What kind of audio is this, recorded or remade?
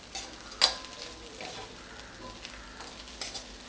recorded